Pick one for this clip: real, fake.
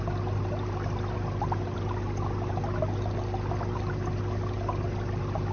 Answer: real